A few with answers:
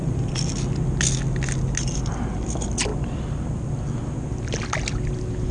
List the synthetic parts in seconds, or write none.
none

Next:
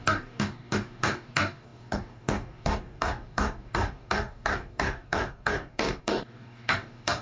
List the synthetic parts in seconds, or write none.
0.0-7.2 (codec, DAC)

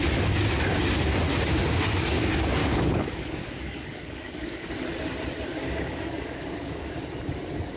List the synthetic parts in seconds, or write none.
2.6-4.7 (codec, DAC); 5.5-6.9

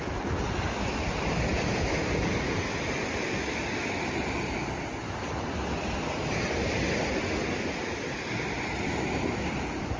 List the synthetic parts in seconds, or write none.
none

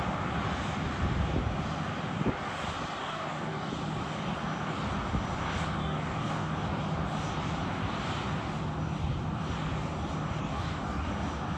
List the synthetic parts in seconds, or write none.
3.0-3.7 (codec, DAC); 5.8-6.5; 10.4-11.1

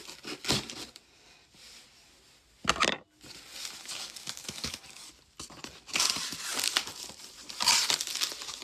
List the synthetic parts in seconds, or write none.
3.8-5.1 (codec, DAC)

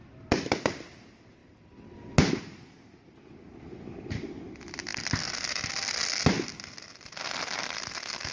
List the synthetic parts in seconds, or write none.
none

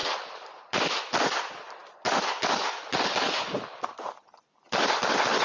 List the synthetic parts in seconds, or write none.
none